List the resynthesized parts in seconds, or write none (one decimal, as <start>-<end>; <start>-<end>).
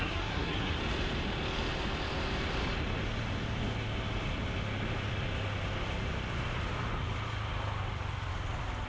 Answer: 0.0-0.8